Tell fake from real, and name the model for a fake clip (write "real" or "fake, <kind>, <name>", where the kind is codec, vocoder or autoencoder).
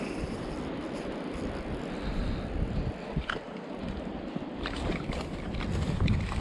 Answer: fake, vocoder, BigVGAN v2